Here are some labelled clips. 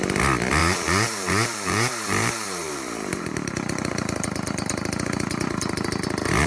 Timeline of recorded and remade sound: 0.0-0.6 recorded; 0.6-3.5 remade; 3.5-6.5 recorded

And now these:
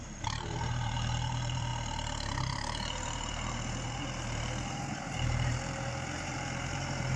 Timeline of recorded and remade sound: 0.0-1.7 remade; 1.7-2.4 recorded; 2.4-7.2 remade

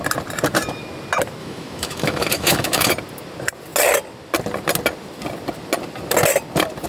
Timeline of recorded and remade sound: 0.0-1.4 recorded; 1.4-2.9 remade; 2.9-6.9 recorded

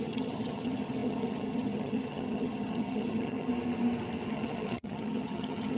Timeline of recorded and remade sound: 0.0-3.5 remade; 3.5-4.3 recorded; 4.3-5.8 remade

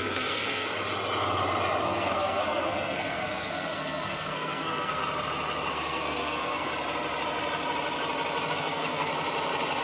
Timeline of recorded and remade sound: 0.0-0.7 remade; 0.7-1.8 recorded; 1.8-5.0 remade; 5.0-5.7 recorded; 5.7-6.7 remade; 6.7-8.5 recorded; 8.5-9.1 remade; 9.1-9.8 recorded

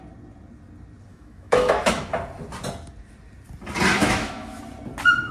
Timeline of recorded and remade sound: 0.0-1.1 recorded; 1.1-2.1 remade; 2.1-4.0 recorded; 4.0-4.6 remade; 4.6-5.3 recorded

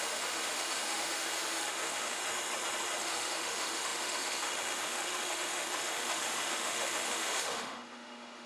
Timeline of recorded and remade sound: 0.0-2.2 remade; 2.2-3.0 recorded; 3.0-8.5 remade